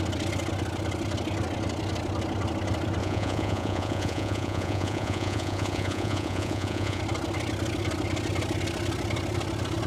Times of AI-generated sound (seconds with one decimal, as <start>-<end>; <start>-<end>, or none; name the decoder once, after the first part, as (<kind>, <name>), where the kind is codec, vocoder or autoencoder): 3.0-7.0 (vocoder, Vocos)

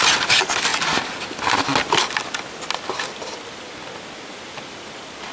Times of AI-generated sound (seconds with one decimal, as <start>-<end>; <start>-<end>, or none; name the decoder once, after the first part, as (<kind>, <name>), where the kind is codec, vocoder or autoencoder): none